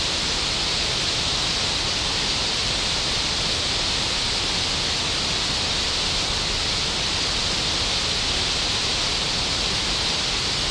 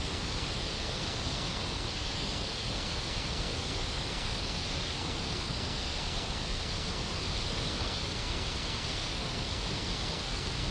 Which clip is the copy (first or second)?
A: second